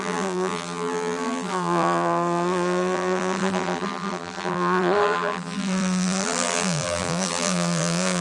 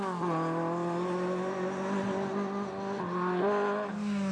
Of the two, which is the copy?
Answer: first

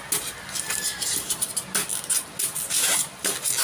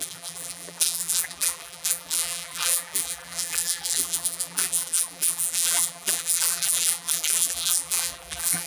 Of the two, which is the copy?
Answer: second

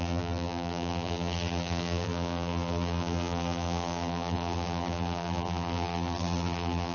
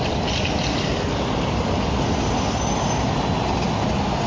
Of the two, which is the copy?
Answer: first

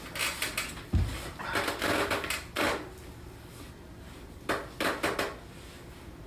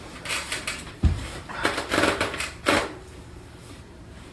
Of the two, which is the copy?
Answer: second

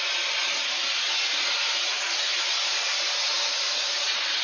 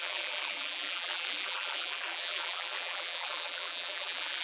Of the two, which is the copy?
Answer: second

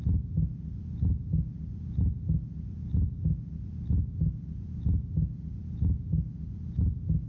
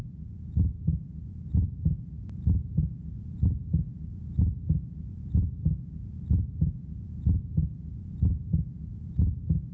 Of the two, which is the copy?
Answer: second